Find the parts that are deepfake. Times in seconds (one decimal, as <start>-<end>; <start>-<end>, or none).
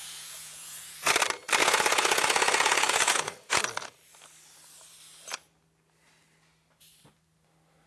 0.0-1.1; 1.6-3.6